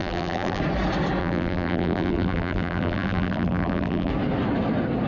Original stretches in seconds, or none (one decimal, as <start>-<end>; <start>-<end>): 0.6-1.2; 4.1-5.1

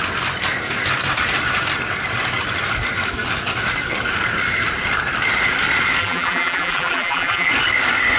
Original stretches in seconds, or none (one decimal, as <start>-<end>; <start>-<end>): 0.0-6.0; 7.5-8.2

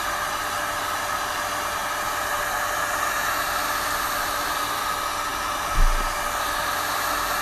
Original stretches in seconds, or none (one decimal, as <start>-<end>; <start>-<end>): 0.0-7.4

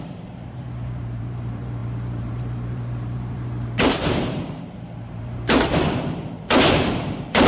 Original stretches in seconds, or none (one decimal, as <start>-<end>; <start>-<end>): none

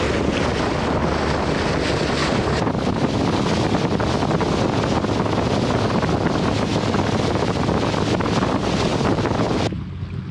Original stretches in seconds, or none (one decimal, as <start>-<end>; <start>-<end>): 0.0-2.2; 2.9-8.9; 9.6-10.3

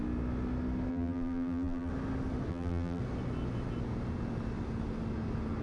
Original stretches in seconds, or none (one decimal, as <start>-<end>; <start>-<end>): 0.0-0.9; 1.9-2.5; 3.0-5.6